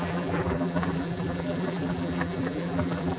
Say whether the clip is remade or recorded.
remade